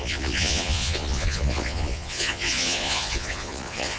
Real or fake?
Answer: fake